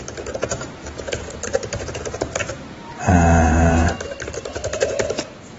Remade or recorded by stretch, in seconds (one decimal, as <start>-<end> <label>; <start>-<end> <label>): 0.0-2.4 recorded; 2.4-4.8 remade; 4.8-5.6 recorded